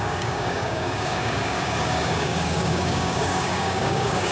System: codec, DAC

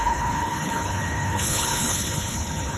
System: codec, HILCodec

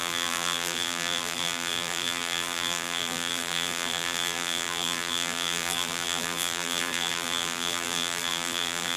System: vocoder, BigVGAN v2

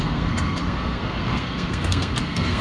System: codec, SNAC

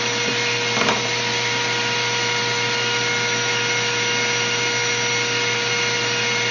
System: none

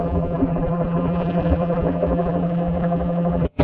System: vocoder, BigVGAN v2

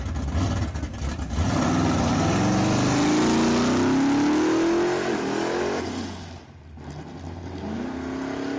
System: none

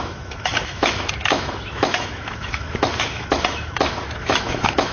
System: autoencoder, DAC-VAE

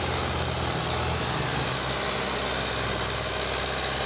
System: none